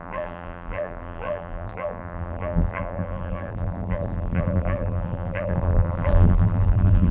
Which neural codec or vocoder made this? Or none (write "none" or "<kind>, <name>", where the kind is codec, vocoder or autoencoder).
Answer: vocoder, BigVGAN v2